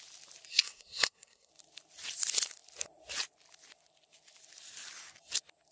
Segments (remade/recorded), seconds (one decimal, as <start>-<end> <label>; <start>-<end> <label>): 0.0-0.5 recorded; 0.5-1.5 remade; 1.5-5.7 recorded